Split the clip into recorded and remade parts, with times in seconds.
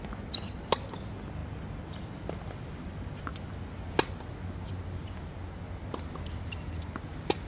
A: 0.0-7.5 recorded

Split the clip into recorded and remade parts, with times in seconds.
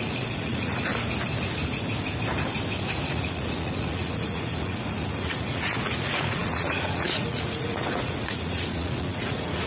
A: 0.0-0.9 remade; 0.9-3.0 recorded; 3.0-9.7 remade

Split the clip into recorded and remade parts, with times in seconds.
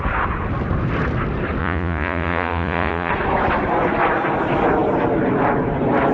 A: 0.0-1.6 recorded; 1.6-3.1 remade; 3.1-6.1 recorded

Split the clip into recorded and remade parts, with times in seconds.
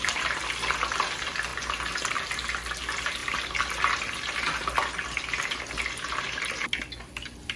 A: 0.0-7.6 recorded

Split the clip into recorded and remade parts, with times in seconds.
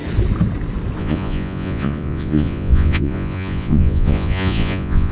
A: 0.0-1.0 recorded; 1.0-5.1 remade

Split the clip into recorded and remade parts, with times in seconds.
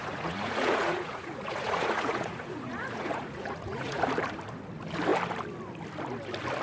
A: 0.0-4.0 remade; 4.0-6.6 recorded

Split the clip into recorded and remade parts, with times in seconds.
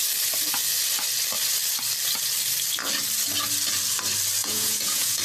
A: 0.0-4.4 recorded; 4.4-5.2 remade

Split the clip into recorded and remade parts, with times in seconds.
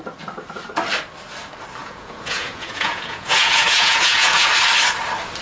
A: 0.0-1.8 recorded; 1.8-4.5 remade; 4.5-5.4 recorded